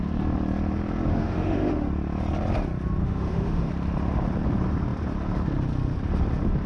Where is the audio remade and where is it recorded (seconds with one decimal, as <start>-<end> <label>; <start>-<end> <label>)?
0.0-1.1 recorded; 1.1-1.9 remade; 1.9-3.0 recorded; 3.0-3.7 remade; 3.7-6.7 recorded

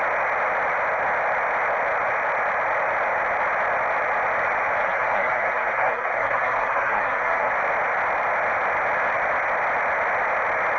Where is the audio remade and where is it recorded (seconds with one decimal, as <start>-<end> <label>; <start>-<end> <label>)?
0.0-4.8 recorded; 4.8-7.5 remade; 7.5-10.8 recorded

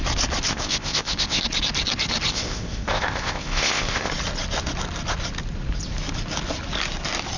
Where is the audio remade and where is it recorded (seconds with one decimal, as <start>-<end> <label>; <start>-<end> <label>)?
0.0-0.5 recorded; 0.5-1.4 remade; 1.4-2.3 recorded; 2.3-4.1 remade; 4.1-7.4 recorded

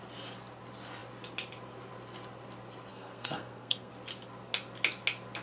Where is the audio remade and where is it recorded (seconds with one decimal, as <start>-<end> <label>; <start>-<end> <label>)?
0.0-2.9 recorded; 2.9-3.9 remade; 3.9-5.4 recorded

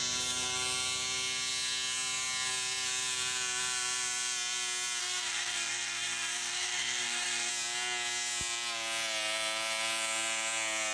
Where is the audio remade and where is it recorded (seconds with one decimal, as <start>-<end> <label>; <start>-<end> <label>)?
0.0-5.0 recorded; 5.0-7.5 remade; 7.5-10.9 recorded

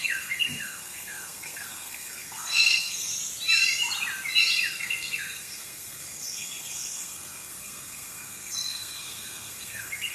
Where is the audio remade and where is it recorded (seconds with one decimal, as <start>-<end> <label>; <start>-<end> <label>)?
0.0-3.1 remade; 3.1-4.7 recorded; 4.7-10.1 remade

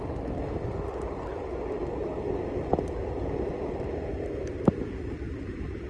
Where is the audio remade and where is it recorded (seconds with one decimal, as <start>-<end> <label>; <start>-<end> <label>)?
0.0-5.9 recorded

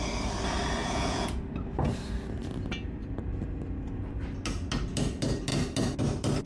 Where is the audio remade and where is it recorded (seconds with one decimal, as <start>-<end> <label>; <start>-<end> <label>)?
0.0-0.8 recorded; 0.8-1.4 remade; 1.4-6.5 recorded